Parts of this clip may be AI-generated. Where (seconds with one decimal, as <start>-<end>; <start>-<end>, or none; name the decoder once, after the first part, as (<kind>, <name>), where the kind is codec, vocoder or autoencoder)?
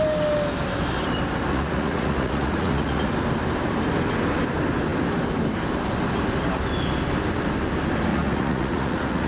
1.5-3.1 (vocoder, Vocos); 8.1-9.3